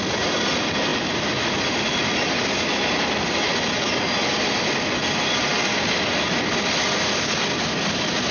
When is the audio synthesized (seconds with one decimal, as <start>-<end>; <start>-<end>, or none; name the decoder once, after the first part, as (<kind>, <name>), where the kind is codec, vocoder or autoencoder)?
none